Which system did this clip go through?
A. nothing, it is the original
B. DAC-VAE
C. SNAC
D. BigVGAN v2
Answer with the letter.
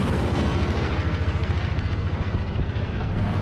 C